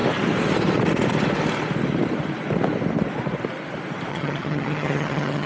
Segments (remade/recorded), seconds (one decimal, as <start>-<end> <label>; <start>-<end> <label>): 0.0-4.1 recorded; 4.1-5.5 remade